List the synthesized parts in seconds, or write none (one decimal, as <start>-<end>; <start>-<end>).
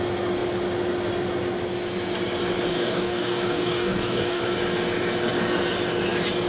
2.7-4.4